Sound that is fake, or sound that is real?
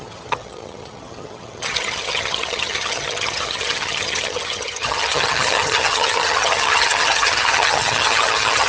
fake